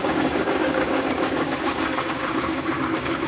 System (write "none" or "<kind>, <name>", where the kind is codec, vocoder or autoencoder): codec, DAC